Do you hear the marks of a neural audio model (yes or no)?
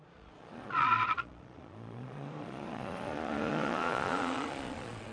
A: yes